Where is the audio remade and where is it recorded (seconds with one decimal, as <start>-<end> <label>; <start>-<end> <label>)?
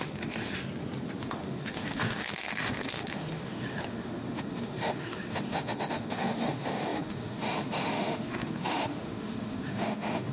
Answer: 0.0-0.6 remade; 0.6-1.2 recorded; 1.2-10.3 remade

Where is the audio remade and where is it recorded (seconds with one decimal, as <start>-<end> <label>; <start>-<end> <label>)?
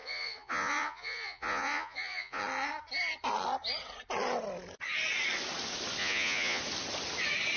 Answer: 0.0-2.4 remade; 2.4-6.0 recorded; 6.0-6.6 remade; 6.6-7.6 recorded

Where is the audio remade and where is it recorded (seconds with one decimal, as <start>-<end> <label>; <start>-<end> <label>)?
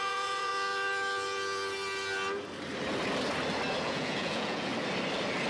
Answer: 0.0-0.5 remade; 0.5-3.8 recorded; 3.8-4.7 remade; 4.7-5.5 recorded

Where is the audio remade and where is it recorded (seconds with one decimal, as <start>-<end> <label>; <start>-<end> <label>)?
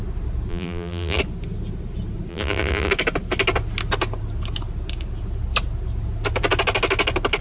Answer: 0.0-0.5 recorded; 0.5-1.2 remade; 1.2-2.3 recorded; 2.3-2.9 remade; 2.9-7.4 recorded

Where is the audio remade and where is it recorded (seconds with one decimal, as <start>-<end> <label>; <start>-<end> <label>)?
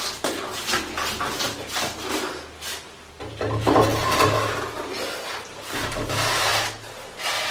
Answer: 0.0-0.5 remade; 0.5-3.2 recorded; 3.2-6.5 remade; 6.5-7.5 recorded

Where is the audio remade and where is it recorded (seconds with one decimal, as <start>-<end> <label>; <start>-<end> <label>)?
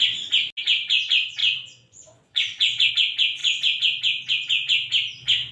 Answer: 0.0-1.4 recorded; 1.4-2.9 remade; 2.9-5.5 recorded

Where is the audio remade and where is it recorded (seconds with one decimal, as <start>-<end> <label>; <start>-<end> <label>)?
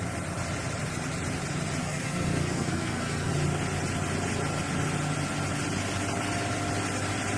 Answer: 0.0-1.8 recorded; 1.8-3.3 remade; 3.3-7.4 recorded